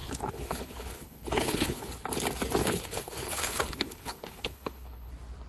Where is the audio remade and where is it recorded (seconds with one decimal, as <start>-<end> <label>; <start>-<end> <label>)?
0.0-1.9 remade; 1.9-2.6 recorded; 2.6-5.1 remade; 5.1-5.5 recorded